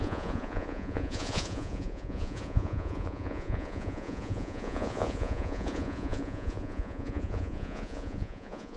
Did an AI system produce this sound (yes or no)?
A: yes